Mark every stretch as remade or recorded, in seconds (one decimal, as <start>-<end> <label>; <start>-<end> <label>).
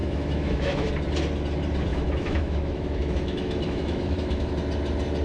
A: 0.0-0.9 remade; 0.9-1.9 recorded; 1.9-4.5 remade; 4.5-5.2 recorded